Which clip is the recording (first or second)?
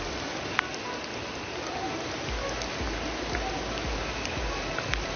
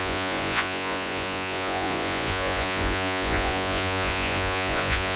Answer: first